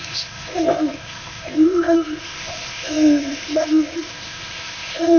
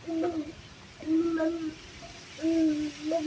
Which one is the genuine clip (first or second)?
second